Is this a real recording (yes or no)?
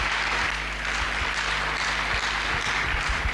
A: yes